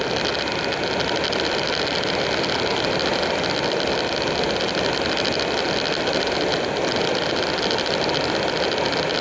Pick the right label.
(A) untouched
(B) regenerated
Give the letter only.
A